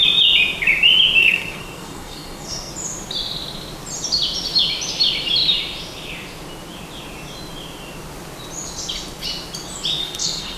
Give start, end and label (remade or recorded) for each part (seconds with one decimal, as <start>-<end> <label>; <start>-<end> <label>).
0.0-1.2 recorded; 1.2-2.7 remade; 2.7-10.0 recorded; 10.0-10.6 remade